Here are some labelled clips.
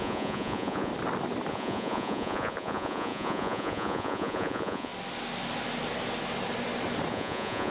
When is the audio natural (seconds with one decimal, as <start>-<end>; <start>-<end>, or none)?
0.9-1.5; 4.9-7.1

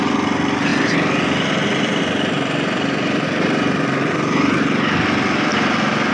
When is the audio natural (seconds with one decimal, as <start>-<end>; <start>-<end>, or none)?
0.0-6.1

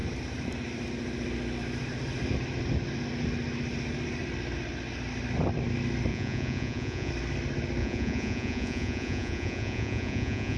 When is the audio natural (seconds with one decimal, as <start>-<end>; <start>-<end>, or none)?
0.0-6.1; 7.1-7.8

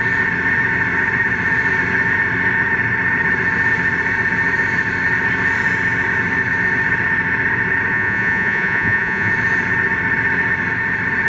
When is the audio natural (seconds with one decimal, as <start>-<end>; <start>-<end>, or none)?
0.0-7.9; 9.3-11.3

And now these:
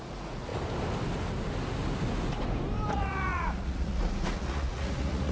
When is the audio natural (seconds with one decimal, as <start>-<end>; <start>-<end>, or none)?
0.5-2.9

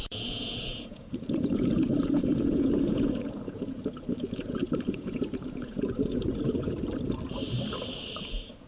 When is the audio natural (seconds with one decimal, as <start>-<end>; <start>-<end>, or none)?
6.7-8.2

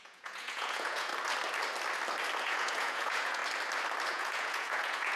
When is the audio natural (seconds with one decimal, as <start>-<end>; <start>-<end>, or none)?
1.1-2.4; 3.4-4.1

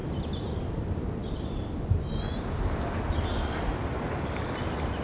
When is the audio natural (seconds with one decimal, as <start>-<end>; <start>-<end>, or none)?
0.0-5.0